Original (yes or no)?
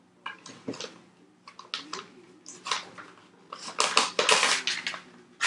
yes